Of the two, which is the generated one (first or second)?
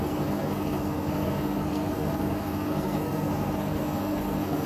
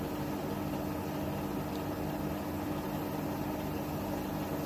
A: first